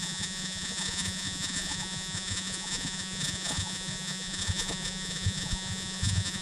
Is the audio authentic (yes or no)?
no